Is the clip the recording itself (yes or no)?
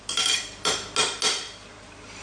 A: yes